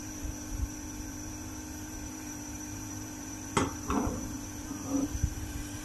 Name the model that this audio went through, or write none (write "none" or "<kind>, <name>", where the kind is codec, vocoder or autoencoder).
vocoder, BigVGAN v2